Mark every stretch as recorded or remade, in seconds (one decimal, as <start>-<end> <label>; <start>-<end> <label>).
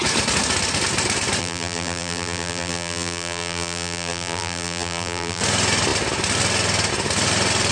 0.0-1.4 recorded; 1.4-5.4 remade; 5.4-7.7 recorded